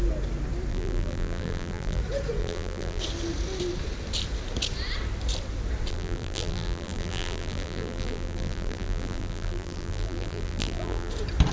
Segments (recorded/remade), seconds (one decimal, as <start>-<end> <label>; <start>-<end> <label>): 0.0-0.7 recorded; 0.7-2.0 remade; 2.0-2.4 recorded; 2.4-3.0 remade; 3.0-5.9 recorded; 5.9-11.1 remade; 11.1-11.5 recorded